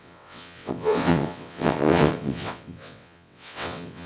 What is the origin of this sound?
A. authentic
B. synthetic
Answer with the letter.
B